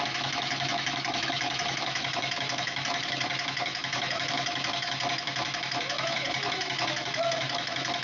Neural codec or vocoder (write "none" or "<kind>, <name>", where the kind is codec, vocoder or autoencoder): autoencoder, DAC-VAE